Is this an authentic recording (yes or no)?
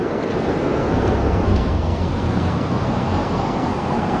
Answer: no